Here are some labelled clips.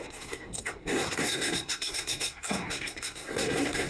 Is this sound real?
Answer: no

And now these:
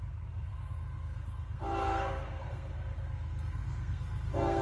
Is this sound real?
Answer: no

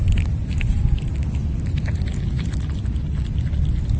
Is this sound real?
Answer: yes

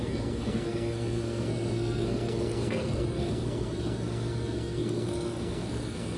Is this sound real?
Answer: no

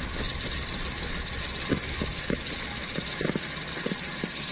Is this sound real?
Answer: yes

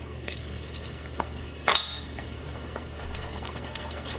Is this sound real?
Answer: no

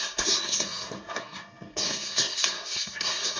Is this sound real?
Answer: no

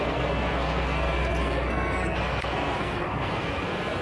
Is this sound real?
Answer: no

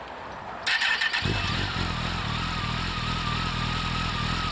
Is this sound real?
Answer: yes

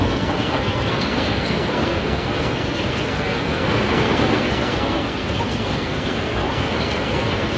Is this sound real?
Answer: no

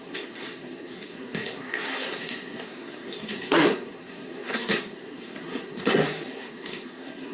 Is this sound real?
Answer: no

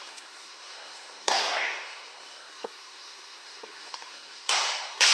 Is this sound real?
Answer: no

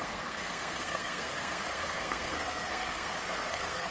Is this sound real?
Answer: no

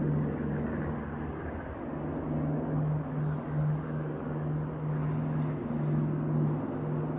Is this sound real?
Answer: yes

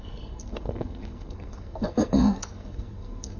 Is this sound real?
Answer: no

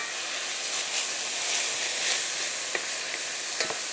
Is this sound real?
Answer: yes